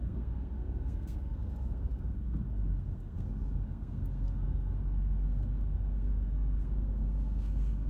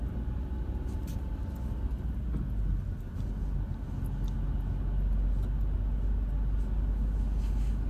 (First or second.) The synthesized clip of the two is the first